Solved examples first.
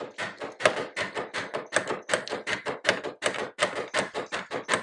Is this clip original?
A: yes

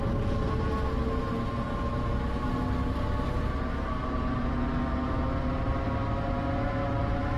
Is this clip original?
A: yes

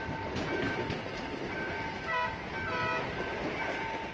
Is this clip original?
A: yes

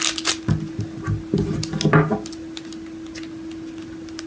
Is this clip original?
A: yes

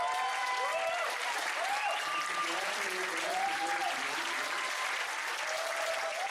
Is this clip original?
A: yes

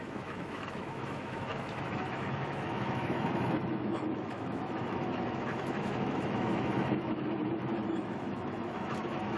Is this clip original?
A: no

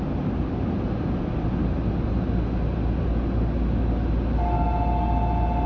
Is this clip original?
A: yes